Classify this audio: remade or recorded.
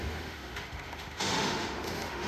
remade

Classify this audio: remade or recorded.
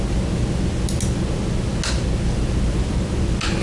recorded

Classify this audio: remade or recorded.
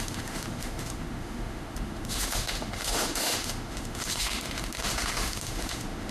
remade